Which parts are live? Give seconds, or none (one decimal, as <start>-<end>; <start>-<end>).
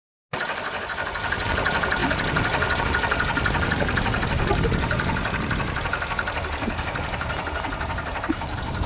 0.0-8.9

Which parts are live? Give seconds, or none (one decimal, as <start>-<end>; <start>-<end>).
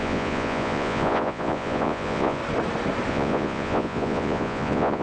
2.4-3.1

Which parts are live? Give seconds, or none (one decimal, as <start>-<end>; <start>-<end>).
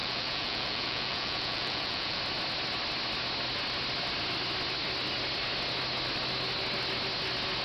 2.2-7.6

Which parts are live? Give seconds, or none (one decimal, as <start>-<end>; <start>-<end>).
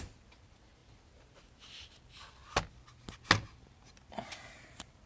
0.0-5.1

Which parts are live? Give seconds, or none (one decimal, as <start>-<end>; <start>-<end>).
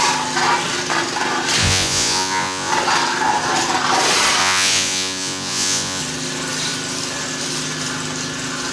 0.0-1.6; 2.7-4.4; 6.0-8.7